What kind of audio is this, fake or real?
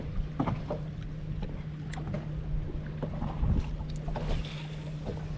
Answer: real